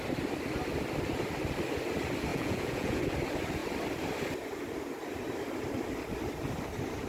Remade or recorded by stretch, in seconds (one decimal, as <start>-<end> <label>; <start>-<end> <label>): 0.0-2.3 recorded; 2.3-3.0 remade; 3.0-7.1 recorded